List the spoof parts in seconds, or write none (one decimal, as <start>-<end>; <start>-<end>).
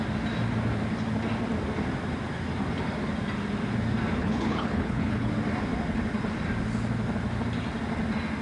4.2-5.3